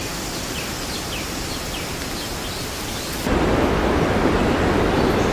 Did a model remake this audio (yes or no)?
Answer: no